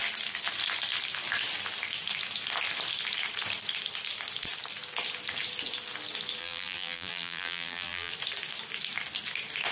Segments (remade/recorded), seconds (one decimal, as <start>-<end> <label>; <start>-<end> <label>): 0.0-6.4 recorded; 6.4-8.1 remade; 8.1-9.7 recorded